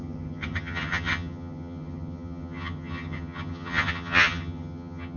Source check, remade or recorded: remade